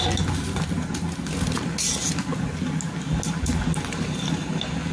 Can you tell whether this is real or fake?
real